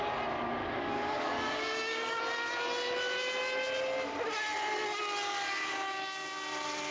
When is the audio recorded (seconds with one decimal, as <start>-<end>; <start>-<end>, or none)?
0.0-0.6; 2.2-6.9